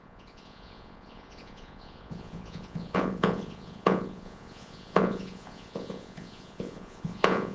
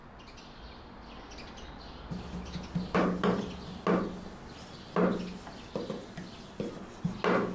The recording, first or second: second